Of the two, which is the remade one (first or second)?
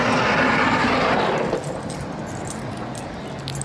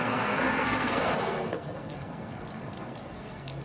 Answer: second